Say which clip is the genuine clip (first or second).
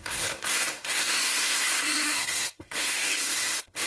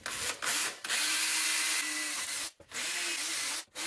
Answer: second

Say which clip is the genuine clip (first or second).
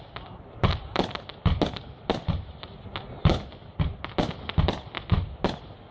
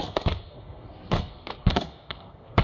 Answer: first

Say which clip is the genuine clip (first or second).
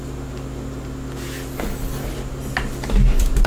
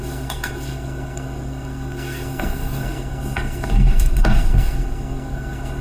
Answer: first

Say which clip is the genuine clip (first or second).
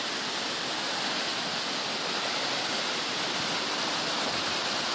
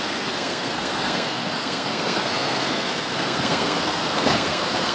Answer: first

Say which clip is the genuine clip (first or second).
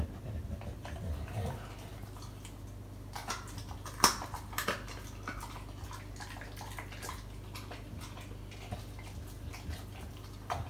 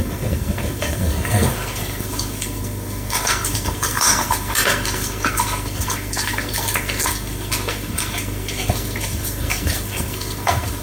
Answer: first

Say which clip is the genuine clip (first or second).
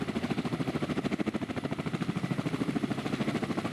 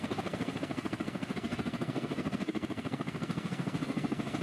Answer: first